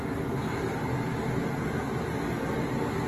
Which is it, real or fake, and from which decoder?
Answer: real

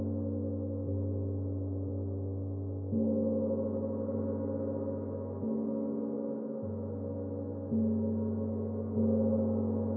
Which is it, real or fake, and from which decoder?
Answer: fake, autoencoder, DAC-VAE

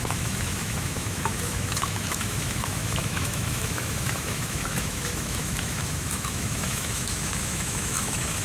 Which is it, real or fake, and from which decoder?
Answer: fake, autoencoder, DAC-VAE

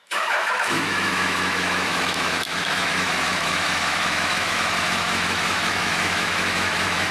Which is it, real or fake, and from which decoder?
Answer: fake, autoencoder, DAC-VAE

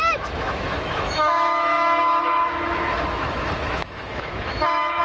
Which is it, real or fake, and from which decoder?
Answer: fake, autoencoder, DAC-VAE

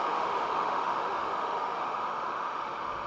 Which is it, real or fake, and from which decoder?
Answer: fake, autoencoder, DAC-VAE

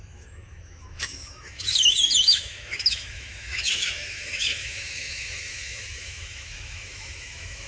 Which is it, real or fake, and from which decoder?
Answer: fake, autoencoder, DAC-VAE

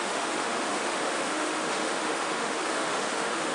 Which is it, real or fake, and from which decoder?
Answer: fake, autoencoder, DAC-VAE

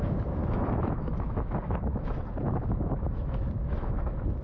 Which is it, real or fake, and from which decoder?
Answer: fake, autoencoder, DAC-VAE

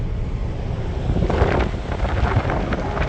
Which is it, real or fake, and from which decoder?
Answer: real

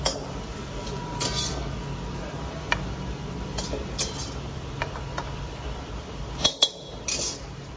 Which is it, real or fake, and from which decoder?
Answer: real